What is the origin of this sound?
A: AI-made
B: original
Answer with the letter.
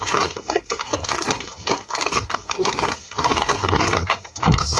A